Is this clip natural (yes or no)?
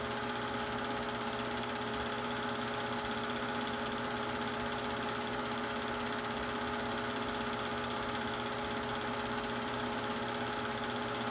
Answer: yes